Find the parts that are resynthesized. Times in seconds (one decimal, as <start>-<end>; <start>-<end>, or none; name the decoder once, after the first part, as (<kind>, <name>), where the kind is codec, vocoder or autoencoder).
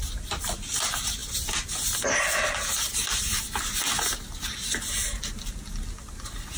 none